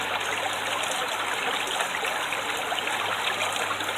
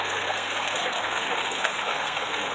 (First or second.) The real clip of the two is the first